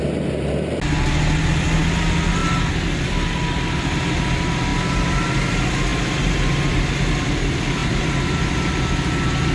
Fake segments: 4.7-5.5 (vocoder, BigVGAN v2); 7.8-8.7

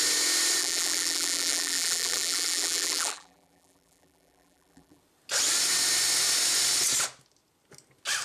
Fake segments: 0.6-5.0 (vocoder, BigVGAN v2)

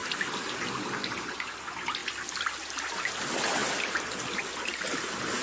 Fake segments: none